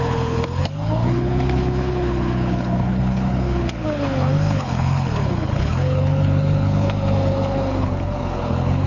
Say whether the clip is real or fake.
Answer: fake